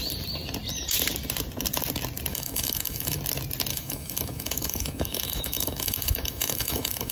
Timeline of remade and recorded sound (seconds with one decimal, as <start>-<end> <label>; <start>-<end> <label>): 0.0-2.3 recorded; 2.3-3.2 remade; 3.2-3.7 recorded; 3.7-7.1 remade